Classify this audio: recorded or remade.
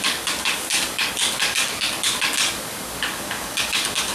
remade